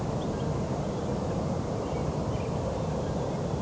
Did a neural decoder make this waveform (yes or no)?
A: no